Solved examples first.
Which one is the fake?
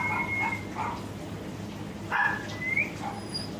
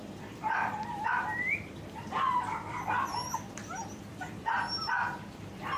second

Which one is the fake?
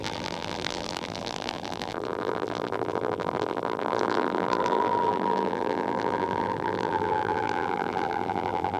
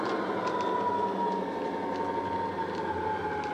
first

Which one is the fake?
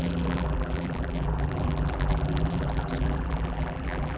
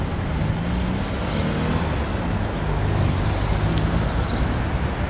first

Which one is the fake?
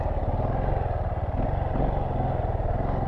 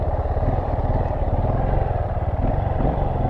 second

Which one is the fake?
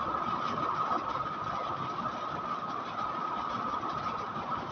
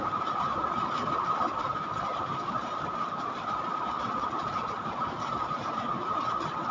second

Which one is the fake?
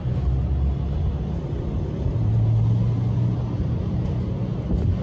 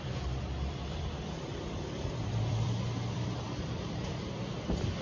second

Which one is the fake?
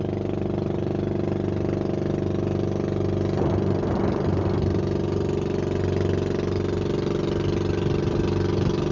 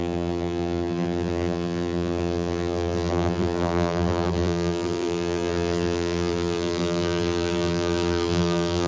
second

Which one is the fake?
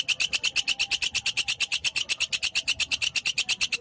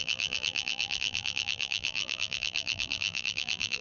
second